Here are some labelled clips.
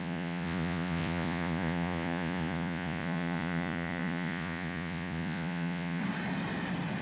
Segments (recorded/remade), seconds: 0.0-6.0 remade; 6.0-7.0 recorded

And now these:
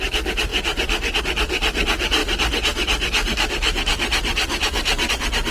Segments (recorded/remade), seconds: 0.0-5.5 recorded

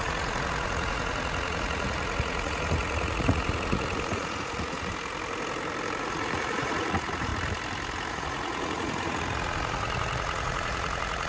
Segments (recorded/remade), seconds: 0.0-4.9 remade; 4.9-6.0 recorded; 6.0-7.3 remade; 7.3-8.1 recorded; 8.1-11.3 remade

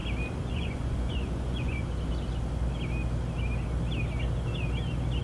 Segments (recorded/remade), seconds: 0.0-0.5 recorded; 0.5-1.8 remade; 1.8-5.2 recorded

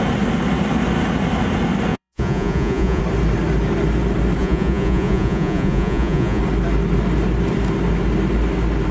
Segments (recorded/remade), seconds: 0.0-1.9 recorded; 1.9-3.0 remade; 3.0-4.4 recorded; 4.4-6.4 remade; 6.4-8.9 recorded

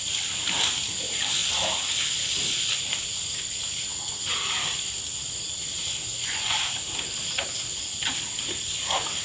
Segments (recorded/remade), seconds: 0.0-6.1 recorded; 6.1-6.6 remade; 6.6-9.2 recorded